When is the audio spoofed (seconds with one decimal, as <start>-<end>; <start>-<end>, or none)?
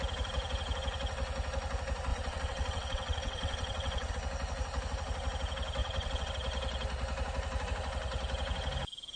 2.1-4.1; 5.8-6.3